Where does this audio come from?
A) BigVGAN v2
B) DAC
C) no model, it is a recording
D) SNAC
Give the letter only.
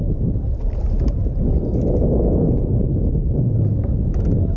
C